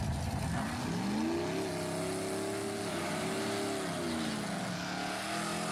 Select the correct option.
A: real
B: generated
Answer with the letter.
A